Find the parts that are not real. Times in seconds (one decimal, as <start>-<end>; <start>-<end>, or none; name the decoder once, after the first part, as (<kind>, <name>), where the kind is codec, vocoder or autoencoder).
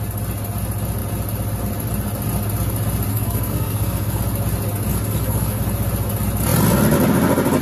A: 3.1-4.2 (codec, SNAC); 4.9-5.6